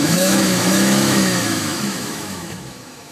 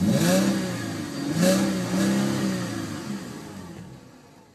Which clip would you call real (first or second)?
second